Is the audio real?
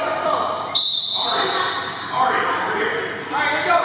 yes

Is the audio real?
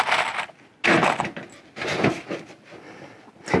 yes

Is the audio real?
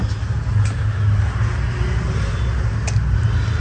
yes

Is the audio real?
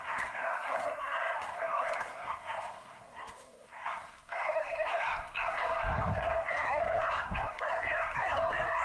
no